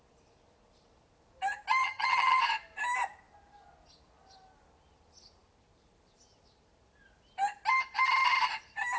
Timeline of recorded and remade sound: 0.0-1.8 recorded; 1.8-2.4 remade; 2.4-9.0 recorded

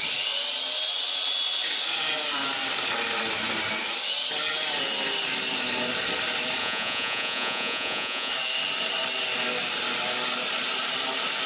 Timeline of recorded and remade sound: 0.0-6.6 recorded; 6.6-8.3 remade; 8.3-11.5 recorded

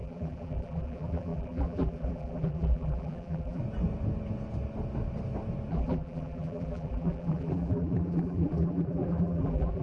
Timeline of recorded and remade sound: 0.0-3.6 remade; 3.6-5.7 recorded; 5.7-9.8 remade

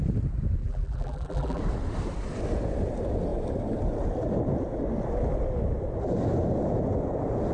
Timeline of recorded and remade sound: 0.0-0.6 recorded; 0.6-1.6 remade; 1.6-7.5 recorded